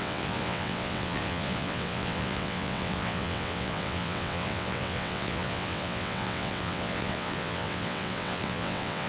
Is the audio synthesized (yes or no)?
yes